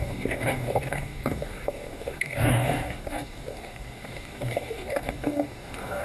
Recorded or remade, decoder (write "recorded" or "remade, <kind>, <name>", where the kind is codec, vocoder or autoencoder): remade, codec, DAC